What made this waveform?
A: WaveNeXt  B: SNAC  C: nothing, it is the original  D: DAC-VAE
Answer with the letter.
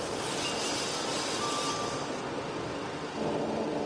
C